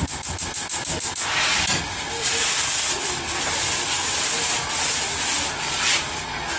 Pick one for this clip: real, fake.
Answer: real